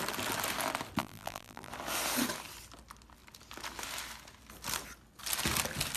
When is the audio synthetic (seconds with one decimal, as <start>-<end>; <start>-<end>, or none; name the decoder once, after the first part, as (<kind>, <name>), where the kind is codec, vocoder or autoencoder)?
1.0-1.7 (vocoder, BigVGAN v2)